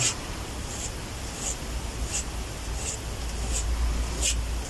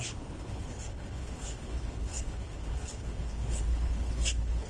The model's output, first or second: second